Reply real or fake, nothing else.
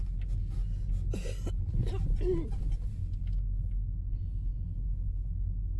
real